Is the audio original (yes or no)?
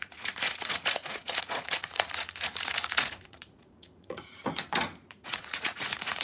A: no